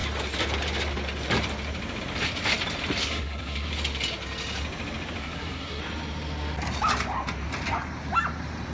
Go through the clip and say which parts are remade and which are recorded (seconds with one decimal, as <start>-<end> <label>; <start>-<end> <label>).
0.0-3.0 recorded; 3.0-3.7 remade; 3.7-5.2 recorded; 5.2-5.8 remade; 5.8-8.7 recorded